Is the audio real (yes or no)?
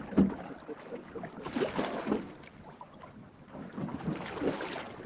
yes